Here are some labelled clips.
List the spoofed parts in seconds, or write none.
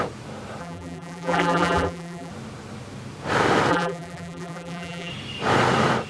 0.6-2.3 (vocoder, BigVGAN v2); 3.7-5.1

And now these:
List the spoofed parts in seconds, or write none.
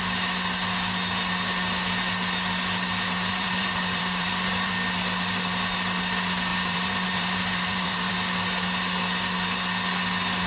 3.3-4.7 (vocoder, BigVGAN v2); 6.5-8.1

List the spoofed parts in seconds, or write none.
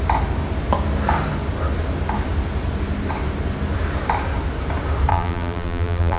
5.1-6.2 (vocoder, BigVGAN v2)